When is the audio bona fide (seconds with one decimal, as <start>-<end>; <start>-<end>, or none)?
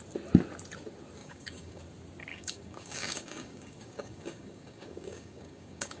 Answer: 0.0-1.2; 1.8-2.3